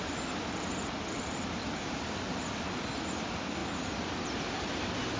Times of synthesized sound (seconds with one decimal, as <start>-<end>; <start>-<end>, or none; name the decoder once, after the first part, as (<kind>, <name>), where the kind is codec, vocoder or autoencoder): 0.0-5.2 (vocoder, BigVGAN v2)